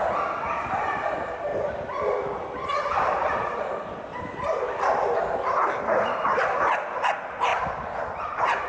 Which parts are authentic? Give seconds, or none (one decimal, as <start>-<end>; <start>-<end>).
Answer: 0.0-1.5; 6.4-7.5